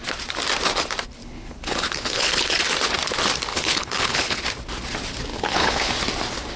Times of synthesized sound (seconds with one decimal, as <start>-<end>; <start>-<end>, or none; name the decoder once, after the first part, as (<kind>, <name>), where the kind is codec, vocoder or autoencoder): 1.2-2.6 (codec, HILCodec); 3.5-4.4; 5.3-5.9